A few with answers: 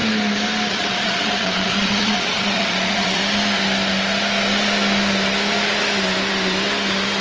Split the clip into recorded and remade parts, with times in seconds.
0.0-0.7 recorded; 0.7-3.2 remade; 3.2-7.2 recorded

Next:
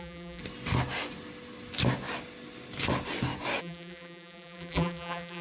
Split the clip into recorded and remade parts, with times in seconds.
0.0-0.4 remade; 0.4-3.6 recorded; 3.6-5.4 remade

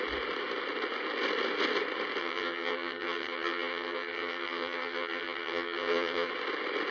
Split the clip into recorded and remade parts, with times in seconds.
0.0-2.2 recorded; 2.2-6.3 remade; 6.3-6.9 recorded

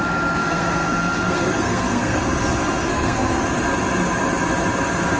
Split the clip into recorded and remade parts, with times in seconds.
0.0-0.4 recorded; 0.4-2.2 remade; 2.2-2.9 recorded; 2.9-3.4 remade; 3.4-5.2 recorded

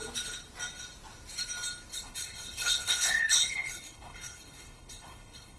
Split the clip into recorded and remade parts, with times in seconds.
0.0-1.9 recorded; 1.9-5.6 remade

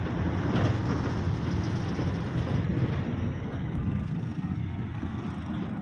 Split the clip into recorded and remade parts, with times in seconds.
0.0-3.2 recorded; 3.2-5.2 remade; 5.2-5.8 recorded

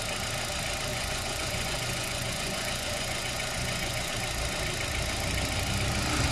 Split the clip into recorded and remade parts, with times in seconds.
0.0-0.9 recorded; 0.9-4.1 remade; 4.1-6.3 recorded

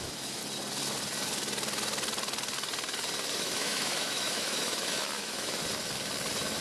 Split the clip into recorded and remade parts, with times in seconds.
0.0-0.4 remade; 0.4-3.4 recorded; 3.4-5.6 remade; 5.6-6.6 recorded